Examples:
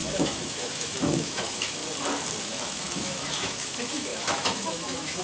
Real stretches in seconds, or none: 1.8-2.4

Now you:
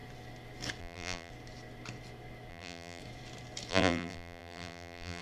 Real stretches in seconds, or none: 0.0-0.8; 1.3-2.5; 3.0-3.7

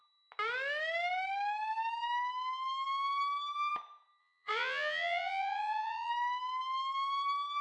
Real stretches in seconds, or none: 0.0-4.2; 6.1-7.6